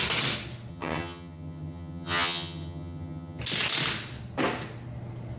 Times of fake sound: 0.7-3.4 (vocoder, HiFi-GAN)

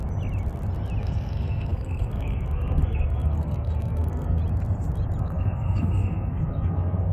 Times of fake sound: 1.0-4.4 (codec, SNAC); 5.2-7.1

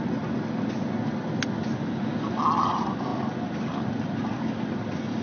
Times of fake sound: none

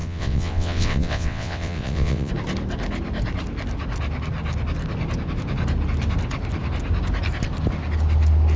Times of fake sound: 0.0-2.3 (vocoder, WaveNeXt)

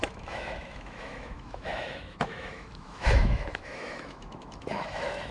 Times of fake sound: 0.0-5.3 (autoencoder, DAC-VAE)

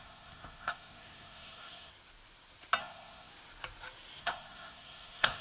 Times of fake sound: 0.0-1.9 (codec, SNAC); 2.8-3.3; 4.2-5.4

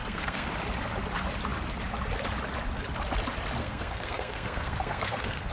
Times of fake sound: 0.0-0.5 (codec, SNAC); 3.6-5.5

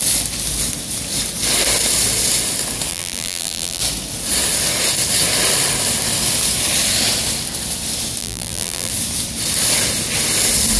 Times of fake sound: 2.9-3.8 (vocoder, BigVGAN v2); 8.2-8.9